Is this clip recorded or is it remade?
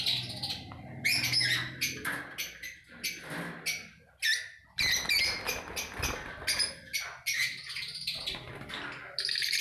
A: recorded